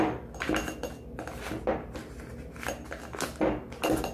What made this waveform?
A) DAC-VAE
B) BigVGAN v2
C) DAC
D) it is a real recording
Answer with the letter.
D